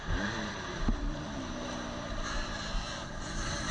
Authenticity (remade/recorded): remade